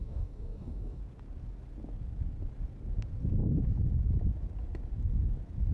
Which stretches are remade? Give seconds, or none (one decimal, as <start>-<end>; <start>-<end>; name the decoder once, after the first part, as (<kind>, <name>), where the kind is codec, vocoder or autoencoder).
0.0-1.0 (codec, DAC)